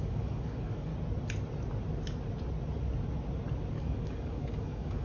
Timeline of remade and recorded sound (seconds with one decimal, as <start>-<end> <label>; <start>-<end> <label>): 0.0-0.9 remade; 0.9-3.7 recorded; 3.7-5.0 remade